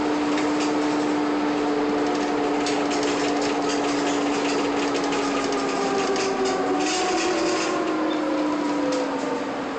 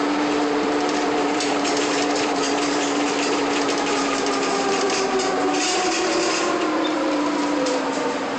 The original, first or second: first